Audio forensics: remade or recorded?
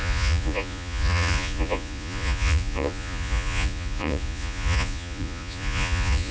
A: remade